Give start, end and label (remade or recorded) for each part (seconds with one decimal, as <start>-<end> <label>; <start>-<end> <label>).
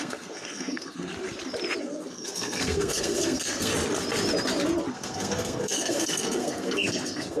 0.0-1.1 remade; 1.1-1.8 recorded; 1.8-3.7 remade; 3.7-4.9 recorded; 4.9-7.4 remade